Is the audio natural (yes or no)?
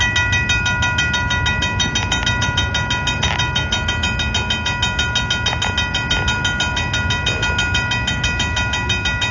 yes